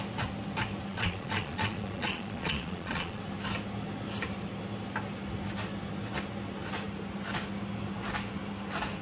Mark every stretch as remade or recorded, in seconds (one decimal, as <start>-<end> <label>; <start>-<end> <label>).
0.0-0.9 recorded; 0.9-3.2 remade; 3.2-9.0 recorded